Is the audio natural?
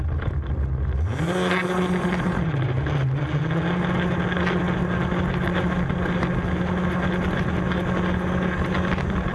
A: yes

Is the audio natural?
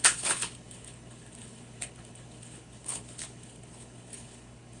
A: no